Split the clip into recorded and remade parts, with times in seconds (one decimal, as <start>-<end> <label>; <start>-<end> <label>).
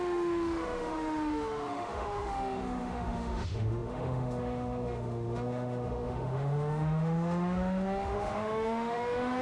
0.0-9.4 remade